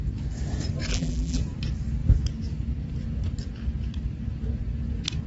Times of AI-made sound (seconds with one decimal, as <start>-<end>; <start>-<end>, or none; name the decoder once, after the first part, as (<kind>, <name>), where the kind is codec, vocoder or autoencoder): 0.9-1.4 (vocoder, BigVGAN v2)